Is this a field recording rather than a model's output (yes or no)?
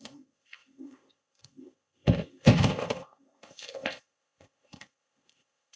no